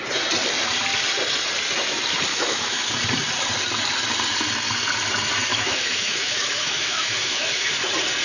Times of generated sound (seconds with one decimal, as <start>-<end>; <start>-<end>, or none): 2.3-2.9; 5.5-7.7